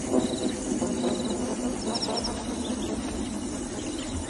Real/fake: real